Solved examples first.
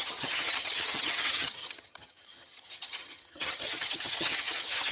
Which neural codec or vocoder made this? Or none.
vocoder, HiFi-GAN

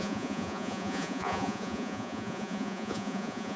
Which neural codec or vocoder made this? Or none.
vocoder, Vocos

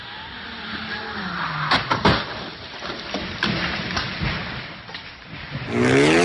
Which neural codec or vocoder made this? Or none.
none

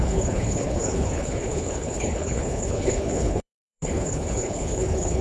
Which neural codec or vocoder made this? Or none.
codec, HILCodec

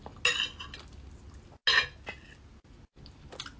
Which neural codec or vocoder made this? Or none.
none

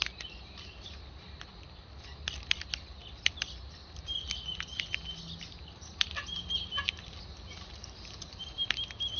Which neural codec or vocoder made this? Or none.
none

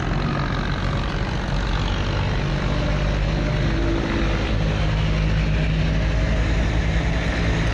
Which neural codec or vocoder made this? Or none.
none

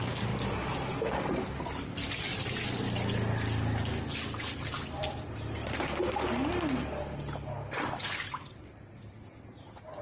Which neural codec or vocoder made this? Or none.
none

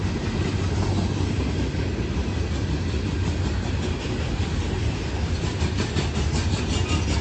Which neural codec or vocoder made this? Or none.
none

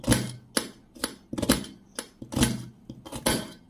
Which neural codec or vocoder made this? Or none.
none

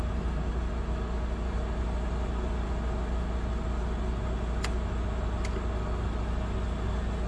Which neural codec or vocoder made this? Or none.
none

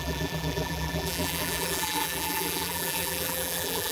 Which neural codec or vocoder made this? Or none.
vocoder, BigVGAN v2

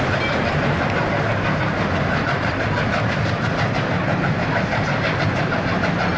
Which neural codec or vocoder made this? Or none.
none